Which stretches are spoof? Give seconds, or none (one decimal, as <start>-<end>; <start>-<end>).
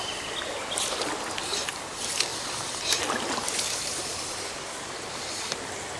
none